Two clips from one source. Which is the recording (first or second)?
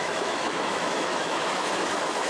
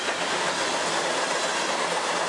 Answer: second